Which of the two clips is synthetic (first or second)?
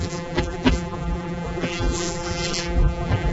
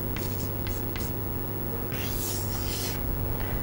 first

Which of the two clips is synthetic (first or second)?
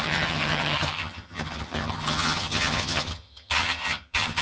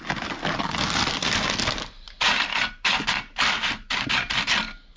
first